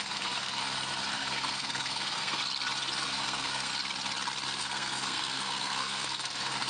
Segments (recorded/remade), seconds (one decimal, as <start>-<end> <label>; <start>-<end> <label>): 0.0-0.6 remade; 0.6-1.1 recorded; 1.1-2.4 remade; 2.4-3.0 recorded; 3.0-3.7 remade; 3.7-4.6 recorded; 4.6-6.7 remade